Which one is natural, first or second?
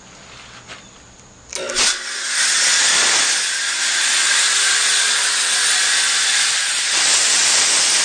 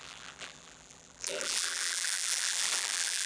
first